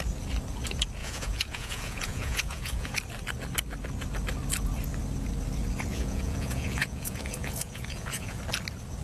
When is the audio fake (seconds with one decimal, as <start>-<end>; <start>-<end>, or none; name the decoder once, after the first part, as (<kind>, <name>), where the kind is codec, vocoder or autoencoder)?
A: 1.0-2.9 (vocoder, Vocos); 5.9-8.4